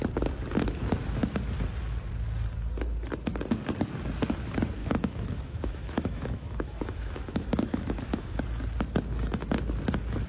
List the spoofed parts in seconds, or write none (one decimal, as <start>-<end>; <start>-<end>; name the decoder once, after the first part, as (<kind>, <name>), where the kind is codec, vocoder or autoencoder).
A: 4.8-8.4 (autoencoder, DAC-VAE)